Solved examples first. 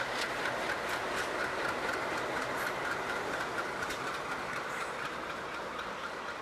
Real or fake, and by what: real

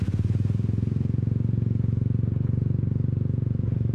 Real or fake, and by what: real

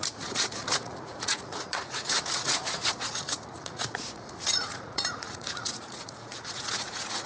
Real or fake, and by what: fake, vocoder, Vocos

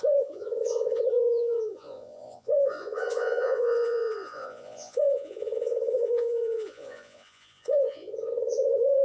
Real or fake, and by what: fake, vocoder, Vocos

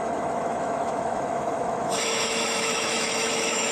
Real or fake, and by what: fake, autoencoder, DAC-VAE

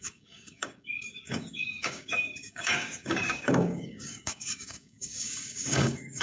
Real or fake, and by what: fake, codec, DAC